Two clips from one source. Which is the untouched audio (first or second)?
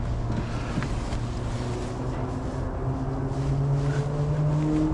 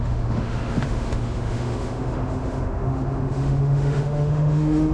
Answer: first